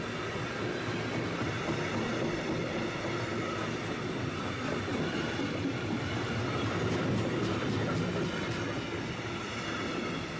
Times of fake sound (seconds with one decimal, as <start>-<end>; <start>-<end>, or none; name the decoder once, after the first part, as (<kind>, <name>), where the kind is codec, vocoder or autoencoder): none